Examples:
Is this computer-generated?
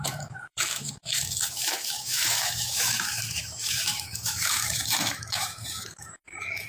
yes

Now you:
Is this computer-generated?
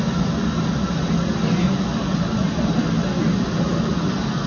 no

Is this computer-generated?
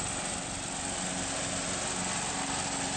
no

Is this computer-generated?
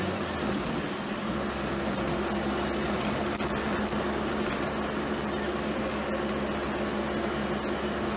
no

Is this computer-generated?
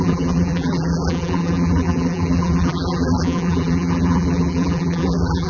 yes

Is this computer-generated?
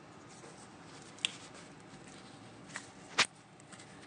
no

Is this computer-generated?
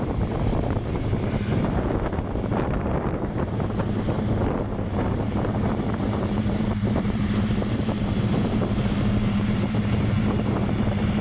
yes